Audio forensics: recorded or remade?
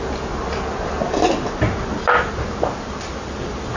recorded